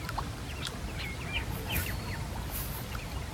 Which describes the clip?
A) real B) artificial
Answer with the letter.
A